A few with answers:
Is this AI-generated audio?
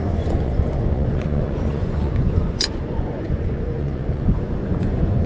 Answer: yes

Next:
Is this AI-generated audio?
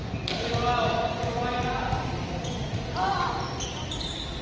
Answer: no